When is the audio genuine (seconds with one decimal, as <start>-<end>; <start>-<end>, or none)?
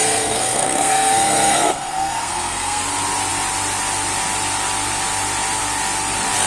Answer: 2.8-6.5